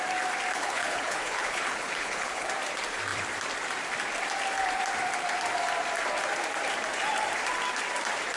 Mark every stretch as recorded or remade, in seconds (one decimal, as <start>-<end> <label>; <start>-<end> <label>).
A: 0.0-0.5 recorded; 0.5-2.5 remade; 2.5-8.4 recorded